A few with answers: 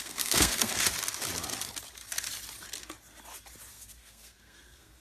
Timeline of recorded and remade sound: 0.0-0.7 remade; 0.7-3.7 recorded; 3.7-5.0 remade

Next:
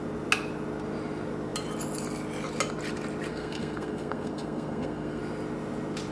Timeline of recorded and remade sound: 0.0-3.3 recorded; 3.3-5.2 remade; 5.2-6.1 recorded

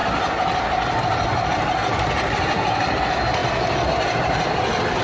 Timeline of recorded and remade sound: 0.0-5.0 recorded